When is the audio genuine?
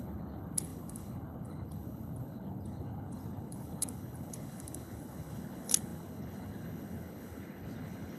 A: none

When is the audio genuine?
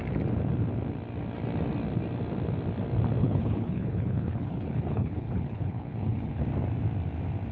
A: 0.0-3.2; 6.4-7.5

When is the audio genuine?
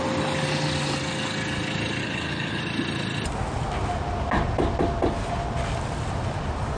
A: 0.0-2.0; 2.6-6.8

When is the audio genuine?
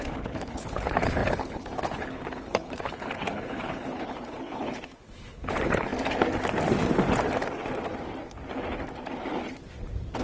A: 5.9-10.2